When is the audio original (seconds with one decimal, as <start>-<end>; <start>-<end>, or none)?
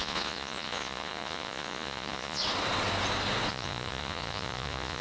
2.4-3.5